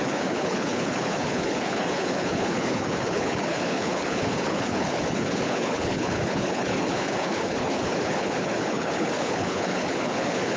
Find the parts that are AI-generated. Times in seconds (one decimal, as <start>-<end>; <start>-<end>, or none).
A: 0.0-10.6